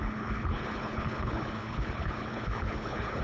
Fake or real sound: fake